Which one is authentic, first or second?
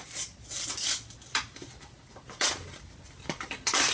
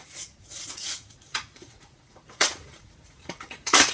first